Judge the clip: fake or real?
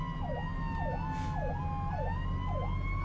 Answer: real